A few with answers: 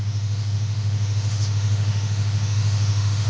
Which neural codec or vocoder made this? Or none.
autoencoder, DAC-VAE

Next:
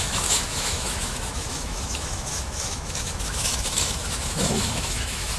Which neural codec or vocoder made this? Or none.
autoencoder, DAC-VAE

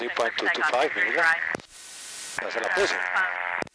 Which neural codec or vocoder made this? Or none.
none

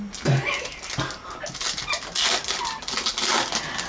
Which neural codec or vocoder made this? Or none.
none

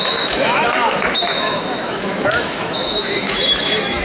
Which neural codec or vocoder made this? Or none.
autoencoder, DAC-VAE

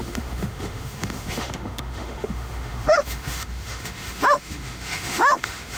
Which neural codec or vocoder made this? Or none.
autoencoder, DAC-VAE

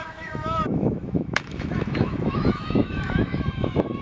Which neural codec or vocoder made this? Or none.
autoencoder, DAC-VAE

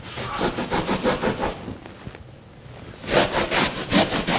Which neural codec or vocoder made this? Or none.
none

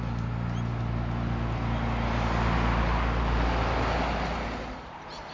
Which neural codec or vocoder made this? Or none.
none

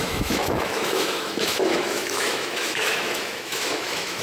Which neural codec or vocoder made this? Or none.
autoencoder, DAC-VAE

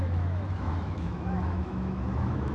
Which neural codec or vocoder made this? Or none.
autoencoder, DAC-VAE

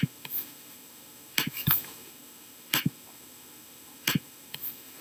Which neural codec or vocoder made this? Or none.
autoencoder, DAC-VAE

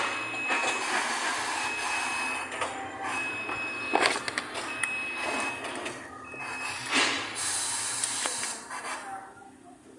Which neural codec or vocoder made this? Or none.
none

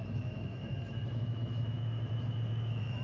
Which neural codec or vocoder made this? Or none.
autoencoder, DAC-VAE